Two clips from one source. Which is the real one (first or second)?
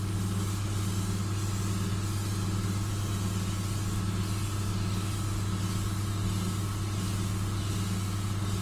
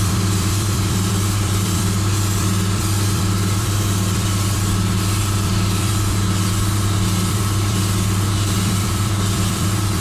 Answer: first